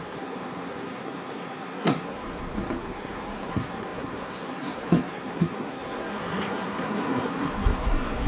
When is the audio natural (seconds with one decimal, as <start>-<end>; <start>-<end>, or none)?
none